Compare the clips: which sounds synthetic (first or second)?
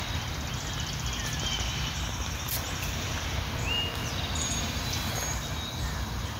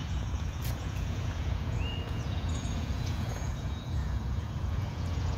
second